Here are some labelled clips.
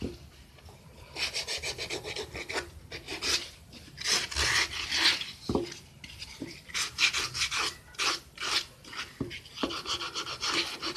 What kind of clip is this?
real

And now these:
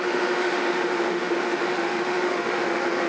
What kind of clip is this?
fake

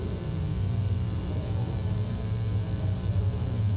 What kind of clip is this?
fake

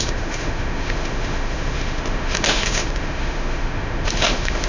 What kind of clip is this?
fake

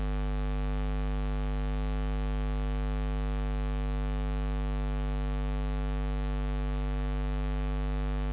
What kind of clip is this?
fake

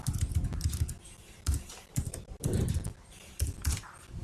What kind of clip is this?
real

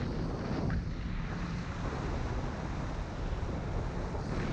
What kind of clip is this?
real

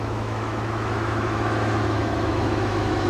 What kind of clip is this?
fake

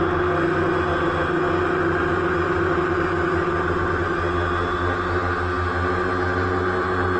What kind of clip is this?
real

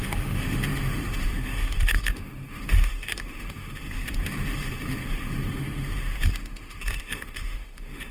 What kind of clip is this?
fake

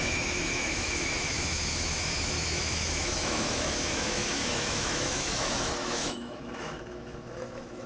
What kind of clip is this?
fake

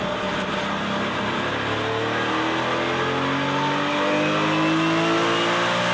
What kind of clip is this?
real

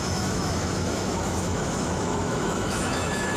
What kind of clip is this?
fake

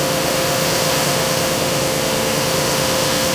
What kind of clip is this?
fake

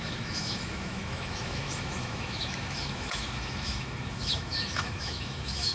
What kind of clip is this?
fake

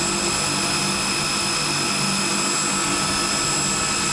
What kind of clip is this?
real